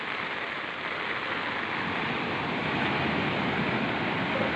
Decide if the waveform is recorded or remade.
recorded